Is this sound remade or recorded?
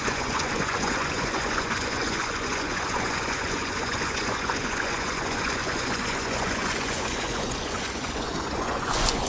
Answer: remade